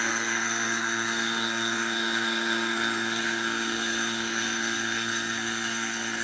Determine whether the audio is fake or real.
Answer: fake